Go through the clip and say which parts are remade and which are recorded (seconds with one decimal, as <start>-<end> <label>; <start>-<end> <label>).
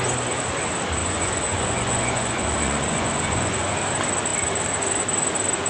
0.0-1.0 recorded; 1.0-3.7 remade; 3.7-5.7 recorded